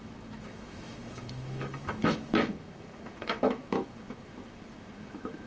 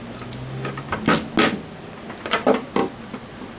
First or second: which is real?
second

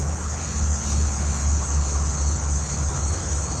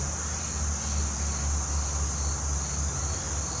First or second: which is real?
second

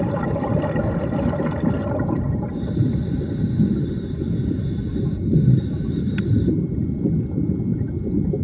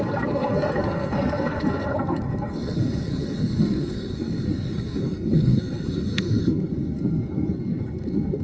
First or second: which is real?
first